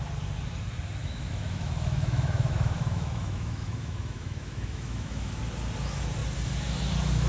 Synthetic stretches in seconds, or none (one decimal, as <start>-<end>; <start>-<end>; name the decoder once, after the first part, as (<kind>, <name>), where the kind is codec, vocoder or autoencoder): 1.0-5.4 (autoencoder, DAC-VAE)